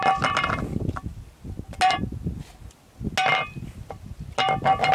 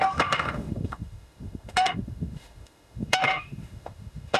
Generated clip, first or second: second